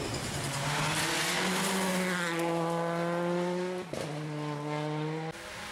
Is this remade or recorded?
recorded